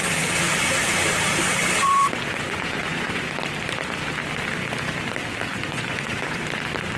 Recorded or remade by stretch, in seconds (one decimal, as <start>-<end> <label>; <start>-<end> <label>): 0.0-1.8 recorded; 1.8-3.3 remade; 3.3-5.5 recorded; 5.5-6.4 remade; 6.4-7.0 recorded

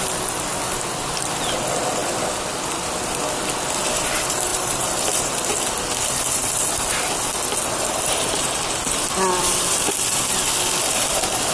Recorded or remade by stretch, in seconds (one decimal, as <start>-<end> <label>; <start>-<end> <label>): 0.0-2.0 recorded; 2.0-3.0 remade; 3.0-4.5 recorded; 4.5-5.4 remade; 5.4-11.5 recorded

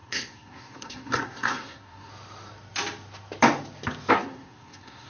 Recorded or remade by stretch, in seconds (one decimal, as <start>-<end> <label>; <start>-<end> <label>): 0.0-2.1 remade; 2.1-4.1 recorded; 4.1-5.1 remade